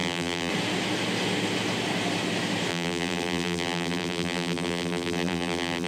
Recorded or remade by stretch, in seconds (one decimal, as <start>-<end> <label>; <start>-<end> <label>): 0.0-0.5 remade; 0.5-2.7 recorded; 2.7-5.9 remade